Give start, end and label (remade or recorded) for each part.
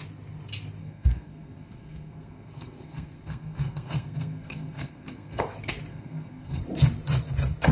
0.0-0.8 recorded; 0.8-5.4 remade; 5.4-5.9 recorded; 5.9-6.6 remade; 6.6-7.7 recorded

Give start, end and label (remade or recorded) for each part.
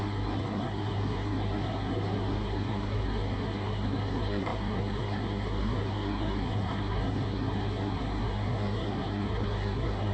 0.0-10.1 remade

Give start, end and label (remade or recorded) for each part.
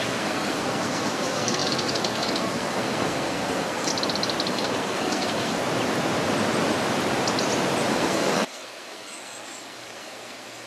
0.0-3.9 remade; 3.9-4.5 recorded; 4.5-5.6 remade; 5.6-7.9 recorded; 7.9-10.7 remade